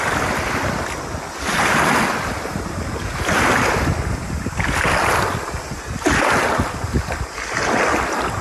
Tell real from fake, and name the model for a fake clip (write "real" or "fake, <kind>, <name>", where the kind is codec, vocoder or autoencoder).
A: real